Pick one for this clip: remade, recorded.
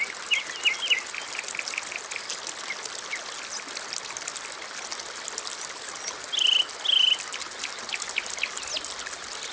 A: recorded